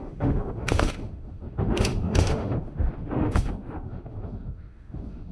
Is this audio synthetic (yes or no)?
yes